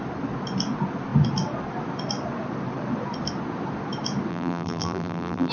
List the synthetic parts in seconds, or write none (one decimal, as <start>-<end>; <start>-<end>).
4.3-5.5